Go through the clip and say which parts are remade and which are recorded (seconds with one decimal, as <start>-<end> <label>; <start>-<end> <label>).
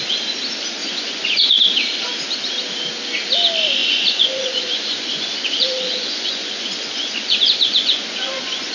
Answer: 0.0-0.8 recorded; 0.8-1.6 remade; 1.6-3.8 recorded; 3.8-8.7 remade